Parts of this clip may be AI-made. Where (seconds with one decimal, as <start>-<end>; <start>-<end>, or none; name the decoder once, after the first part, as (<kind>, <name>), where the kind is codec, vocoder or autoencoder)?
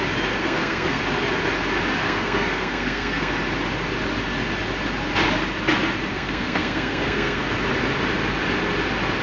0.4-1.0 (codec, SNAC); 2.0-3.3; 6.1-7.4